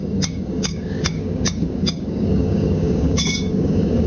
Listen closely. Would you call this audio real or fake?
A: fake